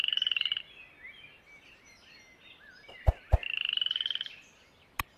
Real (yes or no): yes